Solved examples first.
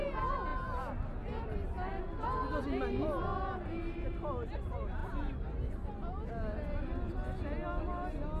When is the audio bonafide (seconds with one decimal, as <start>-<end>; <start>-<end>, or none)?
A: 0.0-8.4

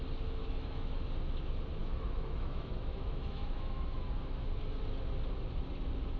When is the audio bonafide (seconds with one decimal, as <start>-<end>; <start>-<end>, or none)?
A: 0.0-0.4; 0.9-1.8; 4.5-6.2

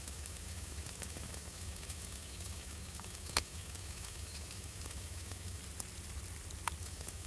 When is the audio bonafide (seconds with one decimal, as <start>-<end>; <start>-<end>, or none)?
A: 5.6-6.8

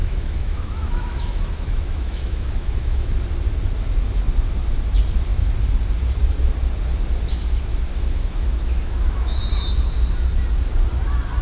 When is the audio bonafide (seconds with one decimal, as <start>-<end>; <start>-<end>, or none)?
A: 3.1-7.9; 9.4-11.4

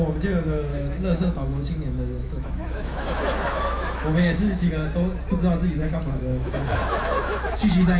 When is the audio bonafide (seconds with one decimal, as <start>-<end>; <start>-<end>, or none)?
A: 0.0-0.7; 4.7-5.8; 7.6-8.0